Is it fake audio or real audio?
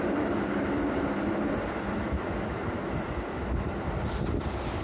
real